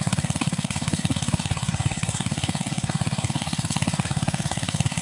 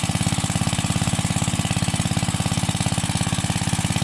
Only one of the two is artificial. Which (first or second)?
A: first